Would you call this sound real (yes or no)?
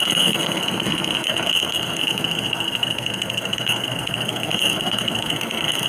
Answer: no